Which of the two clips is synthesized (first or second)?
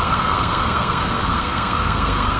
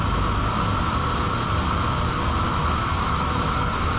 first